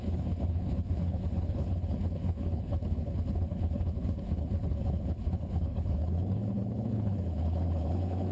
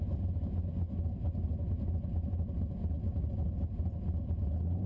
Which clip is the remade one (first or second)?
first